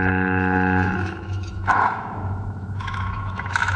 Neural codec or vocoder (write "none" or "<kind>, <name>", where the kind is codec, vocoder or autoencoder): autoencoder, DAC-VAE